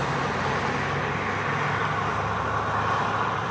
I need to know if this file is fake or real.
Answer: real